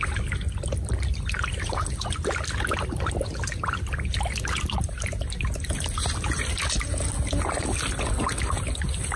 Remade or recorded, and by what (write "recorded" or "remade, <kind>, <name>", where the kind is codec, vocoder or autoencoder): recorded